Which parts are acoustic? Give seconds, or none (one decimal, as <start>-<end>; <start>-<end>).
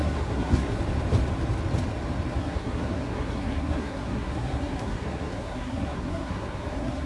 0.8-2.4